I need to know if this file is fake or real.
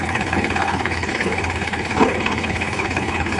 fake